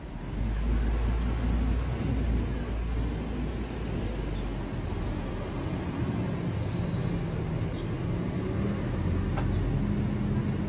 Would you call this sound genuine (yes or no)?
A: yes